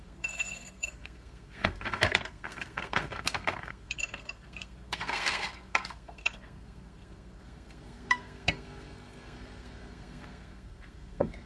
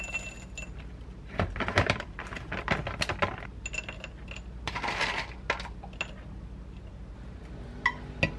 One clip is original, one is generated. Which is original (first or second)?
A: second